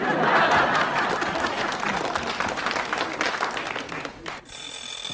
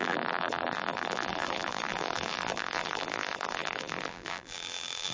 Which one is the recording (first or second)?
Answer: first